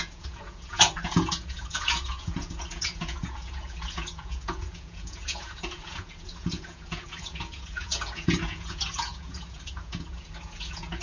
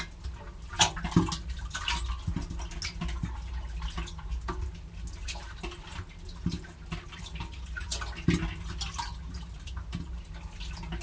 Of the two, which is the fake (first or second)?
first